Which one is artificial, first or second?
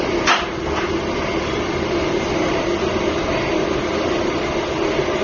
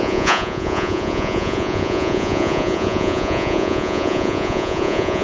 second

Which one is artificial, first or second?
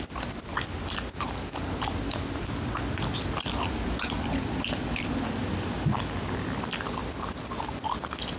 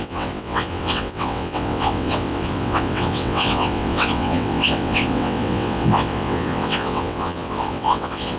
second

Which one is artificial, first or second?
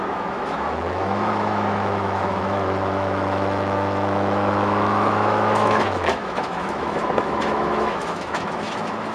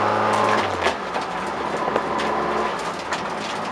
first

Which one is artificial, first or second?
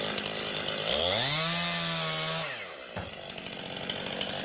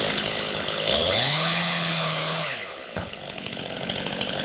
second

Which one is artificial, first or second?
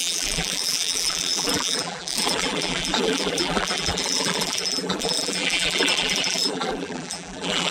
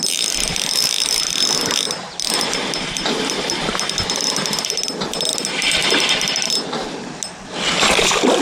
first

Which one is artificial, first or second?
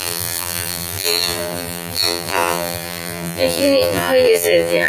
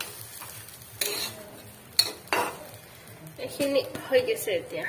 first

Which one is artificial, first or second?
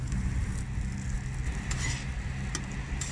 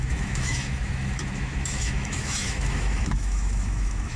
second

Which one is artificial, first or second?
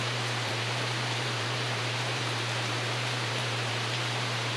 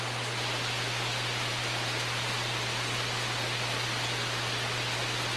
first